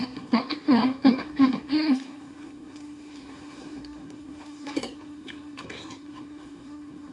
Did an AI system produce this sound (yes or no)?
yes